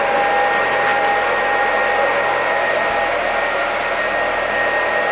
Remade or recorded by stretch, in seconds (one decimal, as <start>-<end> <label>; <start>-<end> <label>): 0.0-5.1 recorded